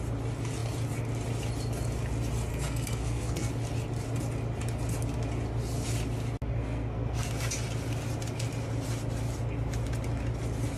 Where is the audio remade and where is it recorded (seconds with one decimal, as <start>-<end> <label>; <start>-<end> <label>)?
0.0-2.5 recorded; 2.5-3.5 remade; 3.5-6.5 recorded; 6.5-7.3 remade; 7.3-10.8 recorded